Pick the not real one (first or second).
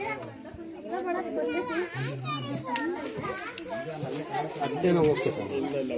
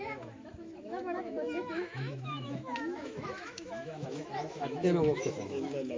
second